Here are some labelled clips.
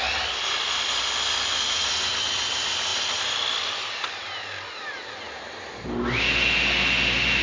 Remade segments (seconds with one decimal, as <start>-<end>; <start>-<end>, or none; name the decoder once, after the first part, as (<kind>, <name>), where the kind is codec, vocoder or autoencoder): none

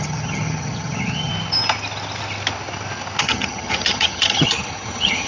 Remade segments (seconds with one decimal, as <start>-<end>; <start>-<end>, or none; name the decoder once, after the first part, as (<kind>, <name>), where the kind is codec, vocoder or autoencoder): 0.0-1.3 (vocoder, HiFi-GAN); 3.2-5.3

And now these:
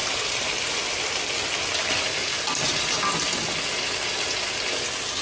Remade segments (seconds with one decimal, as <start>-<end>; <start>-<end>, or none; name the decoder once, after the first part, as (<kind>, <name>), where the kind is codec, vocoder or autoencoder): none

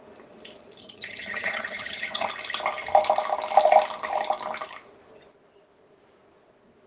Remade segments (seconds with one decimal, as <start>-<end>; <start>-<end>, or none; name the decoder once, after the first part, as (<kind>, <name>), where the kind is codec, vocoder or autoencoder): 0.8-2.3 (vocoder, HiFi-GAN)

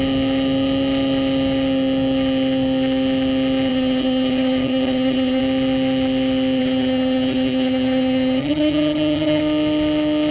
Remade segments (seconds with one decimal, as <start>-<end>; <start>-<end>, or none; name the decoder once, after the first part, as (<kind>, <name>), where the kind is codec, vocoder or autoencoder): 3.7-5.4 (vocoder, HiFi-GAN); 6.6-9.4

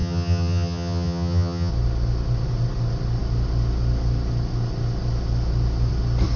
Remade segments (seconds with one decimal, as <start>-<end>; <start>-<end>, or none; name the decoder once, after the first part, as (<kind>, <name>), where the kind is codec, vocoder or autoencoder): 0.0-1.7 (vocoder, HiFi-GAN)

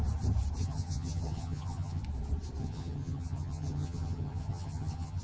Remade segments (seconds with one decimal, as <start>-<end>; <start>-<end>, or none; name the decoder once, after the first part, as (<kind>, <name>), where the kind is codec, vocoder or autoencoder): 0.6-2.0 (vocoder, HiFi-GAN); 2.6-5.2

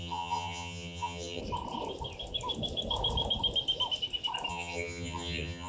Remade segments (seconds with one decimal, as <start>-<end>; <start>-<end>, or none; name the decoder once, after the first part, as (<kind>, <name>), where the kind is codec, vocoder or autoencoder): 0.0-1.4 (vocoder, HiFi-GAN); 4.5-5.7